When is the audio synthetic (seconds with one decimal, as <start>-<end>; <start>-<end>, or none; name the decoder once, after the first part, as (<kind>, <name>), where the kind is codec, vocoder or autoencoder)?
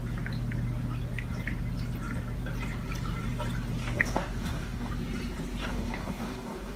3.8-4.9 (codec, DAC); 5.6-6.8